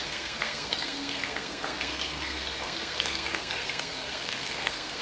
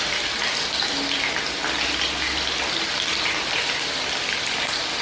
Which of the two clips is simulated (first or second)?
first